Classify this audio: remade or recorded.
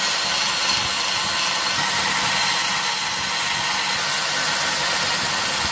recorded